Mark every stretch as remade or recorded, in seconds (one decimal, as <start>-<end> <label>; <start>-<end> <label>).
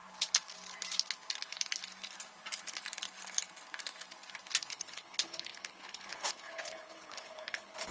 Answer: 0.0-4.7 recorded; 4.7-7.9 remade